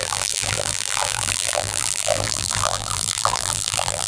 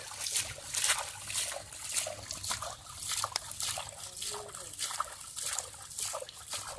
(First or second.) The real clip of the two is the second